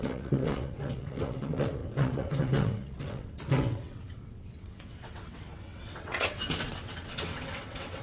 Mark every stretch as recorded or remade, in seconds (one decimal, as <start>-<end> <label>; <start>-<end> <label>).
0.0-8.0 remade